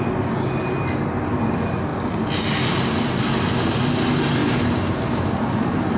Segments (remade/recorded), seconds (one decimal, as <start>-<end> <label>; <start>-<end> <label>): 0.0-4.4 recorded; 4.4-6.0 remade